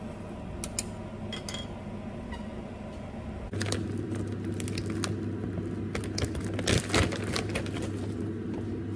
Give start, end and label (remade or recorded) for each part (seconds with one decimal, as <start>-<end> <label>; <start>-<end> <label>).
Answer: 0.0-9.0 recorded